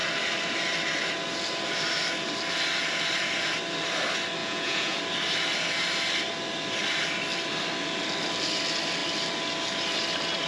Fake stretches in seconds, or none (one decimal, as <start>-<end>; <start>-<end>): 4.4-5.0